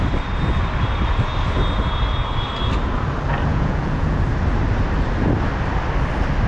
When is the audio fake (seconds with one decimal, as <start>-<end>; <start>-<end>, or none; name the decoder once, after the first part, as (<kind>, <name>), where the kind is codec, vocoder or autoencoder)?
3.5-4.2 (vocoder, Vocos)